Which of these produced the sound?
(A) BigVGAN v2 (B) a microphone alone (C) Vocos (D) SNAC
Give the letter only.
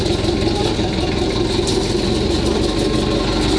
B